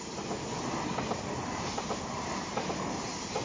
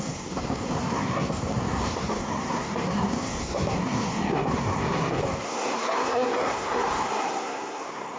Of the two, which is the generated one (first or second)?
second